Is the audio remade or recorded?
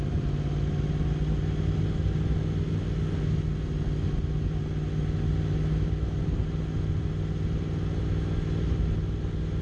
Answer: recorded